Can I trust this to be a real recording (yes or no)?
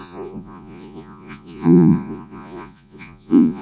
no